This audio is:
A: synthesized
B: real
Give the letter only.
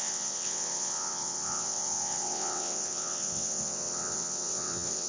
A